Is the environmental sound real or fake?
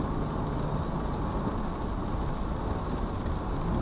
real